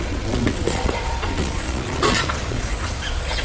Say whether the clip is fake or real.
fake